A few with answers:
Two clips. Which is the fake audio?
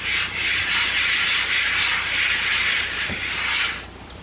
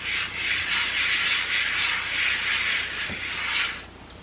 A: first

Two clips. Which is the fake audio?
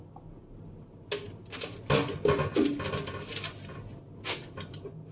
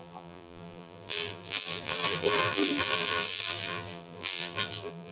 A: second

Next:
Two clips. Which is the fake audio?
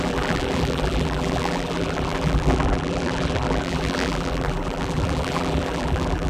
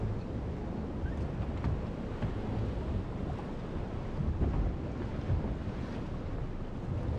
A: first